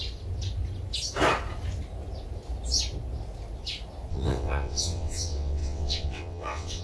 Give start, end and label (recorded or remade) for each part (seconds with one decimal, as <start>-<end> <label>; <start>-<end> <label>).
0.0-4.1 recorded; 4.1-6.8 remade